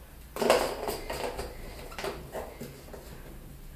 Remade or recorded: recorded